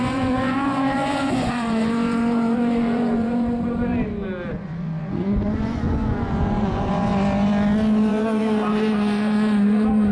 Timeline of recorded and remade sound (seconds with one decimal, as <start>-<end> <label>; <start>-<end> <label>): 0.0-3.9 remade; 3.9-4.5 recorded; 4.5-7.1 remade; 7.1-8.1 recorded; 8.1-10.1 remade